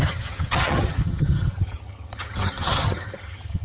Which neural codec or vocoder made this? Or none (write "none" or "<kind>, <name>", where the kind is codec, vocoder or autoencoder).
vocoder, HiFi-GAN